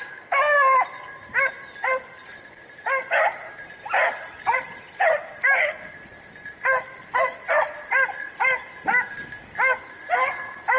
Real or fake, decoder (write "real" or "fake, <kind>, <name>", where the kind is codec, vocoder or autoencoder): real